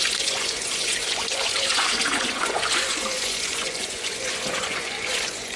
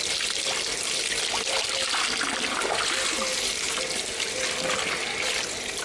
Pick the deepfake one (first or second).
first